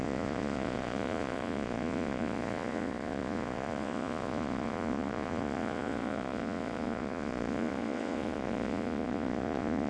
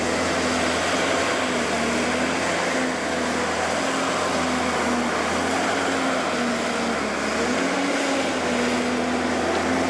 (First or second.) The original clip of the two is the second